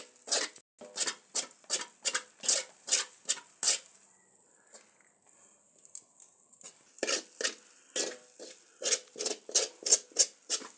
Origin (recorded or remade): recorded